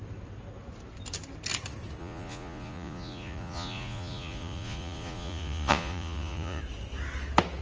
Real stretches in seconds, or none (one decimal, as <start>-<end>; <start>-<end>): 0.0-2.0; 6.6-7.6